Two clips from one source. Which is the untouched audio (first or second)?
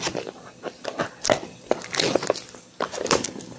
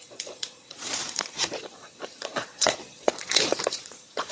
first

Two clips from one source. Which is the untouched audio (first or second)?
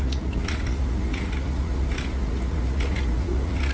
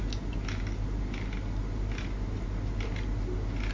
second